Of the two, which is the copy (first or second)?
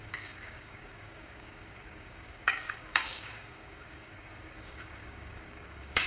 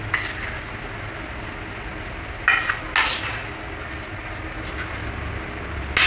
first